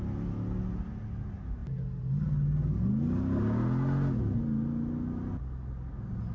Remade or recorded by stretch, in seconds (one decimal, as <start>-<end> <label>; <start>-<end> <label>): 0.0-6.3 recorded